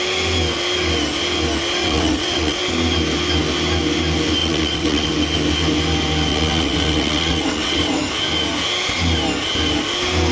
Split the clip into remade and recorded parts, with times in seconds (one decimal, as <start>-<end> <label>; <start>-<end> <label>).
0.0-1.8 recorded; 1.8-2.6 remade; 2.6-4.4 recorded; 4.4-5.1 remade; 5.1-6.3 recorded; 6.3-8.0 remade; 8.0-10.3 recorded